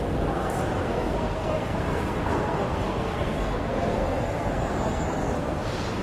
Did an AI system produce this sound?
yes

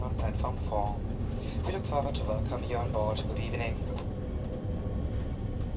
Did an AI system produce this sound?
no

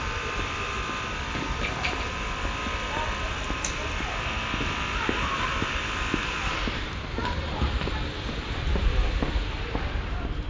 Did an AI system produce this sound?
yes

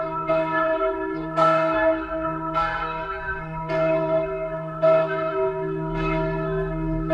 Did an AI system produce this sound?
yes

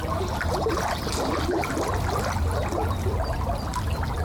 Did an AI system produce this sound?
no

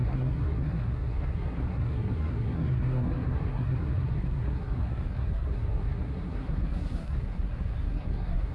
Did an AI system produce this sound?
yes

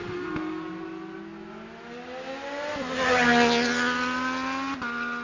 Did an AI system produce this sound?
no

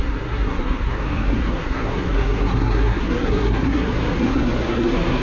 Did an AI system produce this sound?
yes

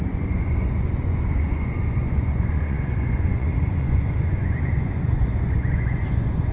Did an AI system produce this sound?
yes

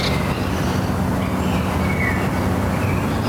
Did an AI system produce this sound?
no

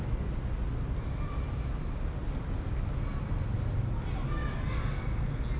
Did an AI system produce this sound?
no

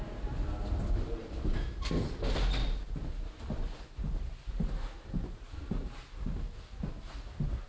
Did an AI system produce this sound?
no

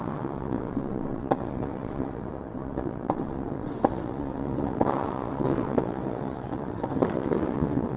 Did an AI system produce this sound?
yes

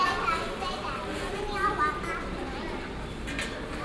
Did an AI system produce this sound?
no